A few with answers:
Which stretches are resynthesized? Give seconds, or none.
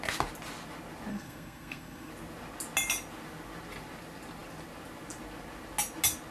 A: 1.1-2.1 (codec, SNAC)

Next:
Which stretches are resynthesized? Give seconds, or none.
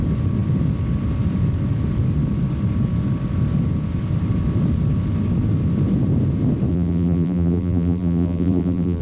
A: 6.7-9.0 (vocoder, BigVGAN v2)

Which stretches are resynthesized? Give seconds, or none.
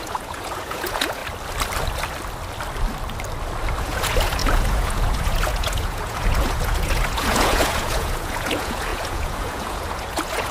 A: 0.0-1.2 (vocoder, Vocos); 3.8-10.5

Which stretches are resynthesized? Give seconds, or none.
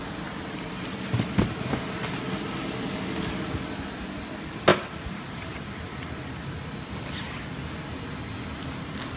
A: none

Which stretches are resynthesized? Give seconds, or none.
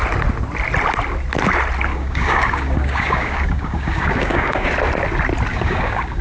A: 1.9-4.7 (codec, DAC); 5.5-6.2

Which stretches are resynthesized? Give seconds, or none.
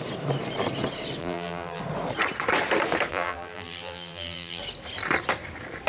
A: 1.2-1.8 (vocoder, BigVGAN v2); 3.1-4.6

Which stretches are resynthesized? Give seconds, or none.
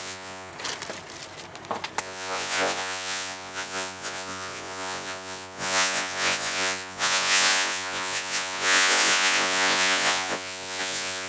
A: 0.0-0.5 (vocoder, Vocos); 2.0-11.3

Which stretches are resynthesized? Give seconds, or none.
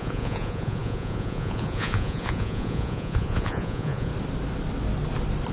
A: 0.0-4.1 (vocoder, Vocos)